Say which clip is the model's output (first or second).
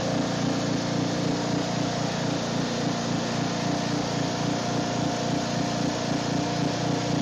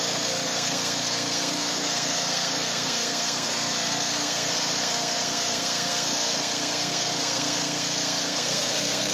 second